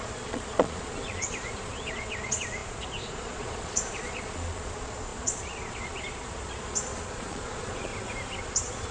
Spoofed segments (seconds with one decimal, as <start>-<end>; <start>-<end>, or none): 0.0-7.9; 8.4-8.9